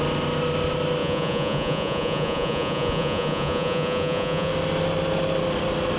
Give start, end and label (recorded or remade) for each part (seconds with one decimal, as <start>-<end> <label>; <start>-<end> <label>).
0.0-1.0 recorded; 1.0-4.5 remade; 4.5-6.0 recorded